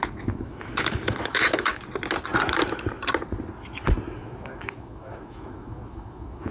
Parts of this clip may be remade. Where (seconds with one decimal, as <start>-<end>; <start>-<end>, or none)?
0.0-1.8; 4.2-6.5